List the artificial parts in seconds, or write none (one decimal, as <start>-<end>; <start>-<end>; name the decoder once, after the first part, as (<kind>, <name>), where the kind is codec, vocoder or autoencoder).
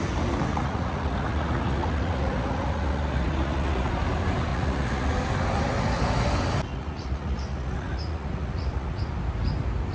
0.5-3.9 (vocoder, Vocos); 4.5-5.1; 6.7-9.0